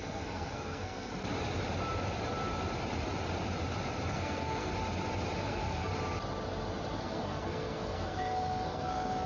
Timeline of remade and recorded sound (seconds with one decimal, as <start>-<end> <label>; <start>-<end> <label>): 0.0-1.1 remade; 1.1-4.1 recorded; 4.1-4.7 remade; 4.7-5.4 recorded; 5.4-5.9 remade; 5.9-7.0 recorded; 7.0-9.3 remade